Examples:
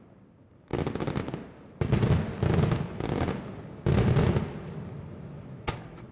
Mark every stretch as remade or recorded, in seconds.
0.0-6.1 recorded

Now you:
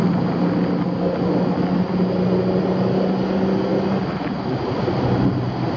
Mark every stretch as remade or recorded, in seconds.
0.0-5.8 recorded

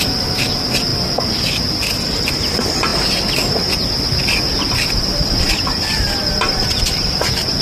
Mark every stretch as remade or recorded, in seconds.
0.0-7.6 recorded

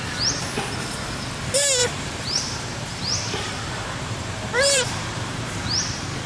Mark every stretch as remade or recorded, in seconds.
0.0-1.8 recorded; 1.8-5.6 remade; 5.6-6.3 recorded

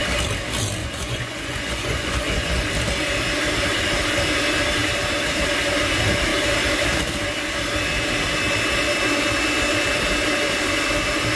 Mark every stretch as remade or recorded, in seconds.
0.0-0.8 recorded; 0.8-2.7 remade; 2.7-11.4 recorded

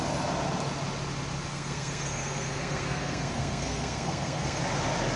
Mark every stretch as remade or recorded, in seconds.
0.0-1.5 recorded; 1.5-4.6 remade; 4.6-5.2 recorded

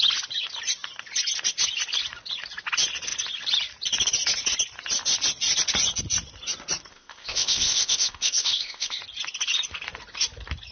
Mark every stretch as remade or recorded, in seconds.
0.0-6.9 recorded; 6.9-9.0 remade; 9.0-10.7 recorded

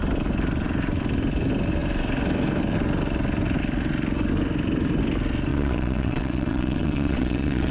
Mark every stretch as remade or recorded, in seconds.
0.0-5.5 recorded; 5.5-7.7 remade